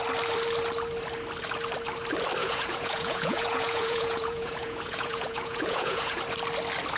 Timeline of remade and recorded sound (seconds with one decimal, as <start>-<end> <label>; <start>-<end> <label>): 0.0-2.4 recorded; 2.4-6.2 remade; 6.2-7.0 recorded